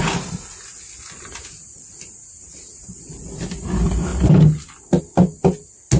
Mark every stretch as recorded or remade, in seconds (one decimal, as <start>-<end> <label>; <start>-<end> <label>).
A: 0.0-6.0 recorded